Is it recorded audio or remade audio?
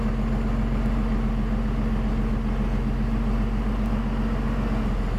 recorded